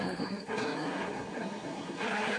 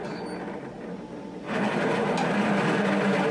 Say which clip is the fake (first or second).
first